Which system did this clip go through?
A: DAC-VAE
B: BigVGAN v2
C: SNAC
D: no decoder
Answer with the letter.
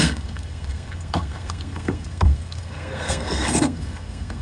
C